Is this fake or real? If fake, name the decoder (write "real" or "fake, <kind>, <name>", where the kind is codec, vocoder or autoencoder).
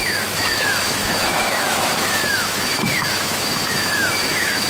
fake, autoencoder, DAC-VAE